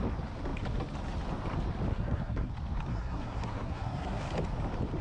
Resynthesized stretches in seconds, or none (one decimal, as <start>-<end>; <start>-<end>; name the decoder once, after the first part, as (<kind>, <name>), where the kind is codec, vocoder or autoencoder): 1.9-2.5 (codec, SNAC); 2.9-4.2